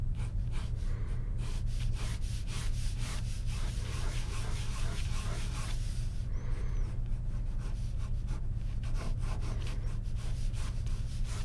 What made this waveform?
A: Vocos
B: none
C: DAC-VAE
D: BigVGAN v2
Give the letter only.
D